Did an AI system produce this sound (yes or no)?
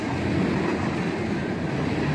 no